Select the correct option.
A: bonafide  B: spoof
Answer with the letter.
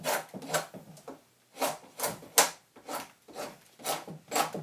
A